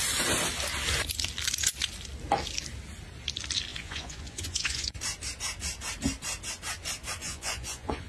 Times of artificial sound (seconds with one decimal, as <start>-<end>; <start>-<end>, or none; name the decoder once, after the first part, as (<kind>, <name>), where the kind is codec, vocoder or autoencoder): 3.7-5.0 (vocoder, Vocos); 7.2-8.1

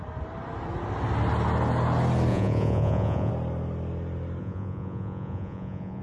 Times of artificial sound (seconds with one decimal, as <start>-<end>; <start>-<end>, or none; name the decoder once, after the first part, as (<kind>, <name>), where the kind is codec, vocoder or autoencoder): 2.3-3.3 (vocoder, Vocos); 4.4-6.0

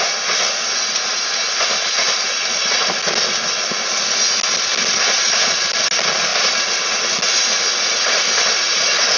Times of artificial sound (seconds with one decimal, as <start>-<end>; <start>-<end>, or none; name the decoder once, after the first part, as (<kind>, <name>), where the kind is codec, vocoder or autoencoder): none